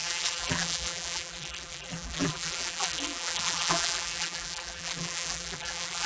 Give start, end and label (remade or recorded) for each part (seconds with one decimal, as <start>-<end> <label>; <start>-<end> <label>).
0.0-6.1 remade